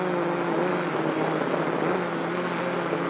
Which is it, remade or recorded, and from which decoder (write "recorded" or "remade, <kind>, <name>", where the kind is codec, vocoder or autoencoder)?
recorded